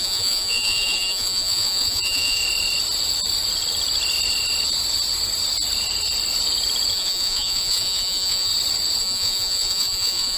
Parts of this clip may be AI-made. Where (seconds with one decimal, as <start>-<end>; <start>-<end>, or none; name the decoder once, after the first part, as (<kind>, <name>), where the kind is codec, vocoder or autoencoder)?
0.0-2.4 (vocoder, Vocos); 6.9-8.5; 9.0-10.4